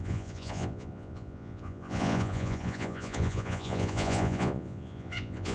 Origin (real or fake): fake